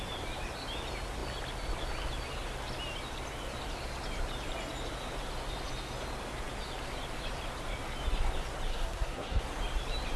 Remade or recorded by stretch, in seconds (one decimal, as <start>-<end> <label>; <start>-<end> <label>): 0.0-8.7 recorded; 8.7-9.4 remade; 9.4-10.2 recorded